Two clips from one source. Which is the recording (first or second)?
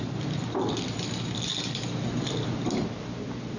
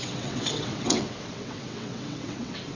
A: first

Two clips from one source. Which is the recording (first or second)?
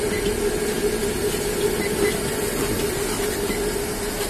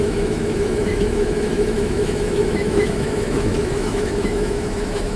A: first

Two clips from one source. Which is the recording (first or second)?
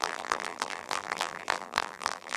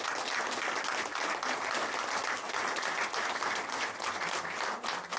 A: second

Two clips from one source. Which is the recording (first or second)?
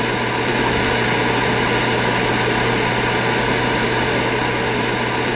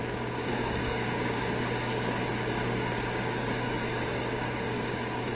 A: first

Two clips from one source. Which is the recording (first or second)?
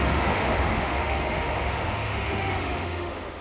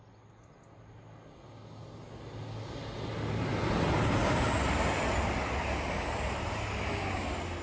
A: second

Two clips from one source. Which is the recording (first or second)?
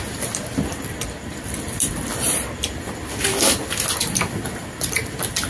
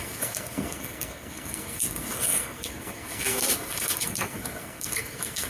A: first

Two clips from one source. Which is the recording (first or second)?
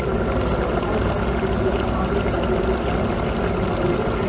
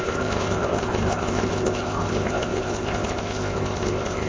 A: first